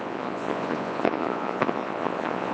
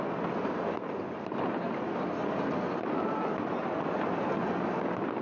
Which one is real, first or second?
second